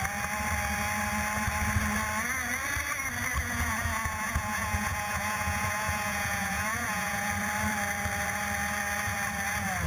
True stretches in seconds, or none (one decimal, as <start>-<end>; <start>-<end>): 0.0-3.4; 7.3-9.9